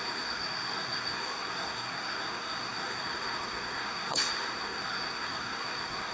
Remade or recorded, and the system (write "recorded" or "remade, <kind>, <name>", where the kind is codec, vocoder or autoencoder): remade, codec, SNAC